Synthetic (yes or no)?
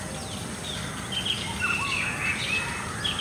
no